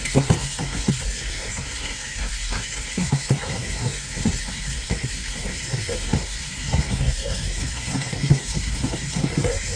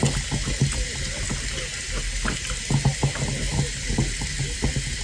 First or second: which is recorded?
second